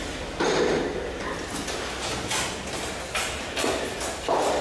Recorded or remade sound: recorded